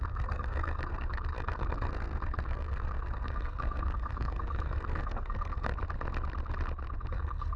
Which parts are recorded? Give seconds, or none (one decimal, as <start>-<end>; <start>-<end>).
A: 5.7-7.1